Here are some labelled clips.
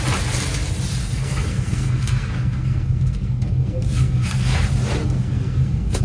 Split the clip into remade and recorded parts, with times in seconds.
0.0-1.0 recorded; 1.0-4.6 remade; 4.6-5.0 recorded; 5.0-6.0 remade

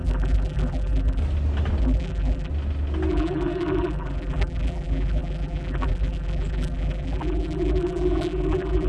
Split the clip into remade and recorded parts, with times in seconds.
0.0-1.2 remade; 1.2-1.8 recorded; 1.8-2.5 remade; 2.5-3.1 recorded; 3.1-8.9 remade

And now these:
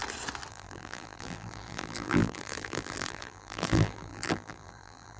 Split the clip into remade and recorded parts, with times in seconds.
0.0-0.5 recorded; 0.5-5.2 remade